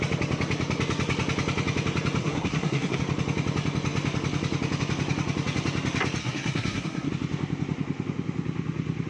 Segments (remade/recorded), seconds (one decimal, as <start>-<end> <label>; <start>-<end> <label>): 0.0-2.2 recorded; 2.2-3.0 remade; 3.0-6.2 recorded; 6.2-7.1 remade; 7.1-9.1 recorded